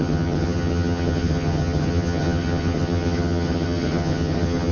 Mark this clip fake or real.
fake